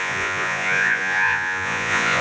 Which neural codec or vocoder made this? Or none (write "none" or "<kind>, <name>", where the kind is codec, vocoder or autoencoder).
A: vocoder, Vocos